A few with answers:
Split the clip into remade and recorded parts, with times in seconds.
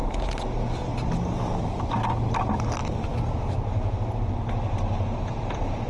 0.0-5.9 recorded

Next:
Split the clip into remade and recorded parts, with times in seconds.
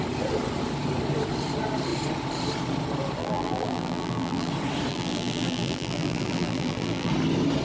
0.0-3.2 recorded; 3.2-4.5 remade; 4.5-4.9 recorded; 4.9-7.1 remade; 7.1-7.6 recorded